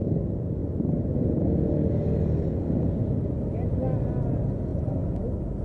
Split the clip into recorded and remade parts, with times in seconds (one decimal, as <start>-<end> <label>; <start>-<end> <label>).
0.0-5.6 recorded